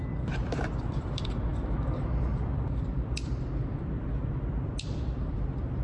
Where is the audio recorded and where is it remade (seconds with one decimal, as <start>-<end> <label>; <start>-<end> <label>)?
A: 0.0-0.9 recorded; 0.9-5.8 remade